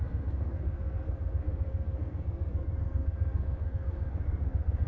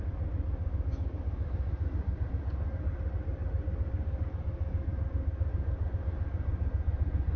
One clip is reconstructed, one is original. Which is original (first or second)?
second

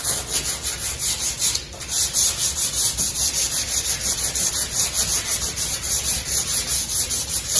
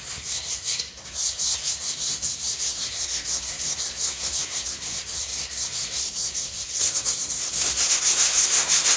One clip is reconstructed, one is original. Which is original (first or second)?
first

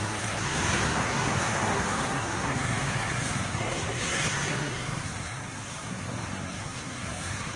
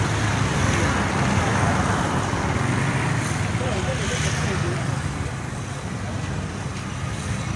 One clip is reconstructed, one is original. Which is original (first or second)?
second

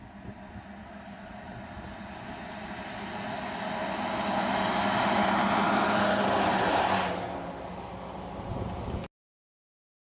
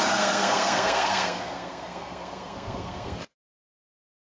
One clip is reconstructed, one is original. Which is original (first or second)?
first